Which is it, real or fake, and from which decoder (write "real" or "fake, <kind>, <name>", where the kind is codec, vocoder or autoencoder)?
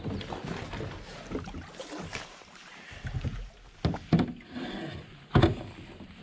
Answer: real